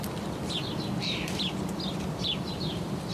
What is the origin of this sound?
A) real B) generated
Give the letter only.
B